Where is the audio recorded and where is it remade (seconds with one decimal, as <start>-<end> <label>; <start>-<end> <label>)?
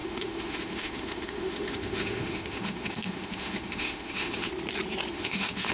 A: 0.0-4.5 remade; 4.5-5.1 recorded; 5.1-5.7 remade